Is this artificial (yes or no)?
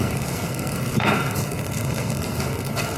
yes